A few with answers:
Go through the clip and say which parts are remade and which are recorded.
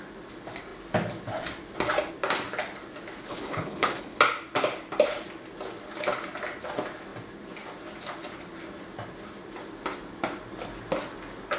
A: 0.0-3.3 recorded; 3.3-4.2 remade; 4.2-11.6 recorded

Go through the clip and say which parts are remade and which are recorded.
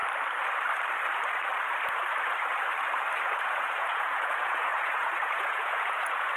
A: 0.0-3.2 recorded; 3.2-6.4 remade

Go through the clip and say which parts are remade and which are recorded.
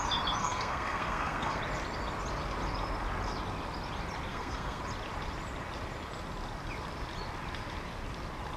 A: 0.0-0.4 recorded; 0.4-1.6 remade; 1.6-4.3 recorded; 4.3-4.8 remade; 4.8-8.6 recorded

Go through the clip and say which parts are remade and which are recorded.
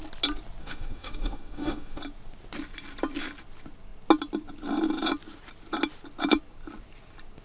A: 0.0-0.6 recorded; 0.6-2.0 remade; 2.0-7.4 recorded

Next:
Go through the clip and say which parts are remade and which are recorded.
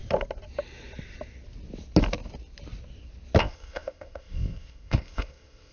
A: 0.0-3.4 recorded; 3.4-5.7 remade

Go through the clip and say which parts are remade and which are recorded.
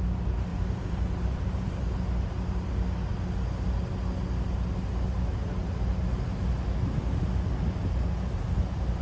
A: 0.0-0.5 recorded; 0.5-1.8 remade; 1.8-7.8 recorded; 7.8-9.0 remade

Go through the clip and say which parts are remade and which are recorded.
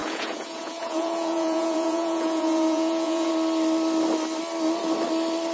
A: 0.0-3.3 remade; 3.3-5.5 recorded